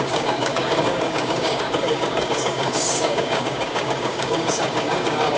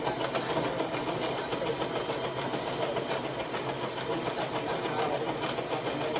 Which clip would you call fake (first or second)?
first